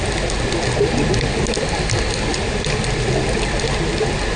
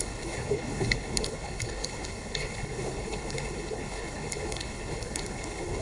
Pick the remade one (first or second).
second